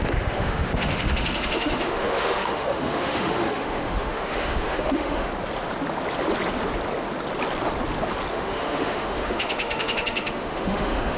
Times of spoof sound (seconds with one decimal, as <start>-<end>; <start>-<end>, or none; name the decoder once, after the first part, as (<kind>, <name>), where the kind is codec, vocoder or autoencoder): 0.0-5.3 (autoencoder, DAC-VAE); 8.3-11.2